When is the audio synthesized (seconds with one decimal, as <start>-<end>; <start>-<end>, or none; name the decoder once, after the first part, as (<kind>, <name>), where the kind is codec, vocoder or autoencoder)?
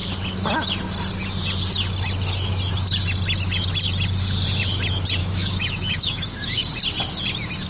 5.2-6.6 (autoencoder, DAC-VAE)